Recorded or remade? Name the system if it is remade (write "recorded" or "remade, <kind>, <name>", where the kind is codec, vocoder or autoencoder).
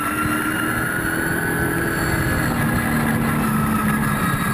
recorded